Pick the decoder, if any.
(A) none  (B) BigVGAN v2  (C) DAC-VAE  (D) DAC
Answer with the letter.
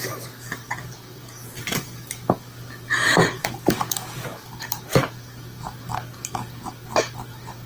D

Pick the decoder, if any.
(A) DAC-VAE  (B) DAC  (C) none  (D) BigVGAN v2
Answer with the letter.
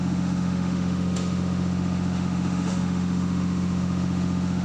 A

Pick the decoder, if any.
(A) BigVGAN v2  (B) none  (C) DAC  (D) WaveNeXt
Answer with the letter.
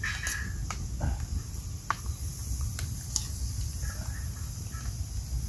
B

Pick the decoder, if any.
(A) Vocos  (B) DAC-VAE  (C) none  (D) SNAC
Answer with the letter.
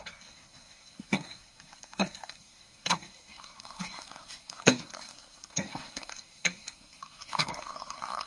D